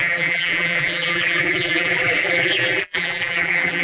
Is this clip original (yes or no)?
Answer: no